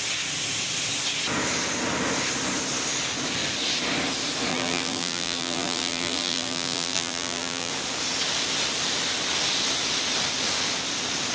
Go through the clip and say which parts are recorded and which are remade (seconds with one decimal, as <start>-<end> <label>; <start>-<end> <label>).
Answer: 0.0-4.5 recorded; 4.5-7.7 remade; 7.7-11.3 recorded